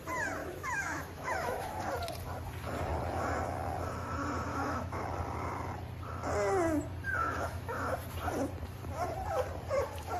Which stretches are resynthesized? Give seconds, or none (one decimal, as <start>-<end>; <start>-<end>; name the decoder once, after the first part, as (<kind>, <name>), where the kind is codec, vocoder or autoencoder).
0.4-1.8 (autoencoder, DAC-VAE); 4.5-5.0; 7.2-7.9